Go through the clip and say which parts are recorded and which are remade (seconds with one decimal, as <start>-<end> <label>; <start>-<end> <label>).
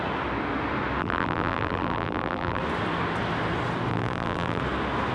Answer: 0.0-1.0 recorded; 1.0-2.6 remade; 2.6-3.9 recorded; 3.9-4.6 remade; 4.6-5.1 recorded